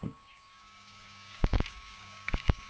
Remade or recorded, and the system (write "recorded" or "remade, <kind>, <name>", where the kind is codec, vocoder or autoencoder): remade, codec, DAC